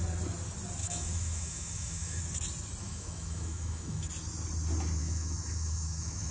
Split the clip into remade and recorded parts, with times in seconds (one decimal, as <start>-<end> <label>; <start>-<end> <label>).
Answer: 0.0-0.8 recorded; 0.8-2.2 remade; 2.2-2.8 recorded; 2.8-4.1 remade; 4.1-5.0 recorded; 5.0-6.3 remade